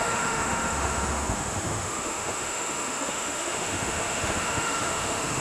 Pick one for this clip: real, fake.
fake